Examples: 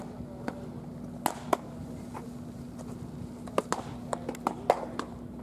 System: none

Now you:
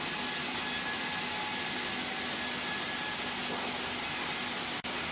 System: none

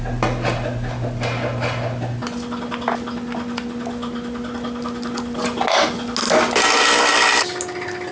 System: none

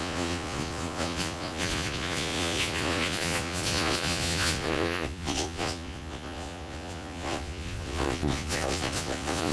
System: vocoder, Vocos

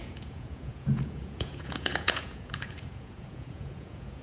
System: vocoder, Vocos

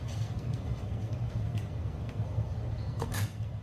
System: codec, SNAC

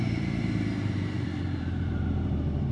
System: vocoder, BigVGAN v2